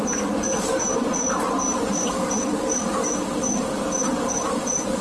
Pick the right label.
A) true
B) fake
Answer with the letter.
A